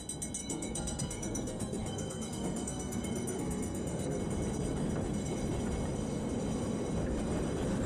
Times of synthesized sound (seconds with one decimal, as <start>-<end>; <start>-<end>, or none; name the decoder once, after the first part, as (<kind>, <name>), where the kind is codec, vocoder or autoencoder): 0.4-4.2 (codec, SNAC)